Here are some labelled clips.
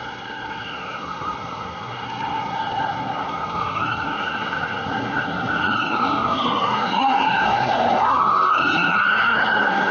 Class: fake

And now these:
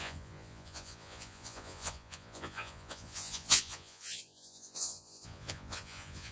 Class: fake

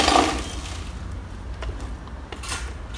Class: real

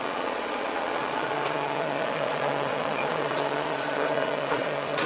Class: fake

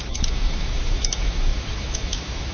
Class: fake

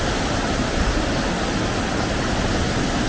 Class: real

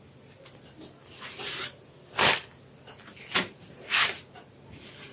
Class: real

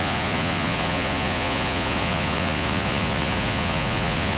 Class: fake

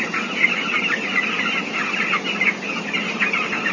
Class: real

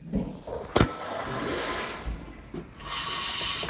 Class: real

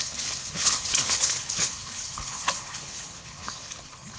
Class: fake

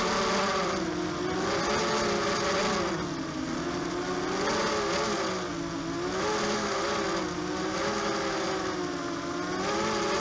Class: real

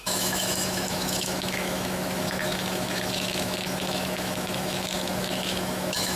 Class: fake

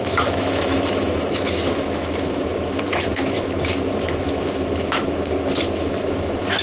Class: fake